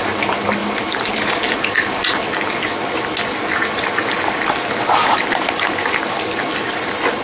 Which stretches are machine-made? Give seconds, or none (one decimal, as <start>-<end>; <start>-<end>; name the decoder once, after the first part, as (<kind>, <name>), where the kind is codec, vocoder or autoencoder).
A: none